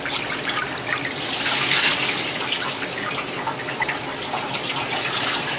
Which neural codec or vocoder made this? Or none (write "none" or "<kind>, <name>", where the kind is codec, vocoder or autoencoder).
none